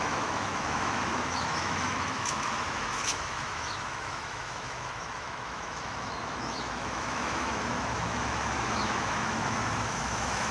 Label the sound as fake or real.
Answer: fake